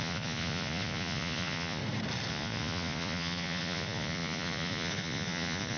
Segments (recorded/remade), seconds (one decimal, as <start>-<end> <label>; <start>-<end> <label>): 0.0-1.8 remade; 1.8-2.3 recorded; 2.3-5.8 remade